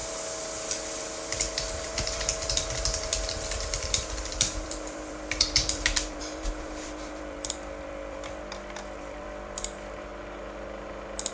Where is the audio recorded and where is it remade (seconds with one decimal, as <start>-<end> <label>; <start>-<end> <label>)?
0.0-1.0 recorded; 1.0-10.1 remade; 10.1-11.3 recorded